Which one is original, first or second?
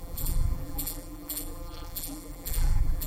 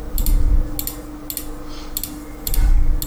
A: second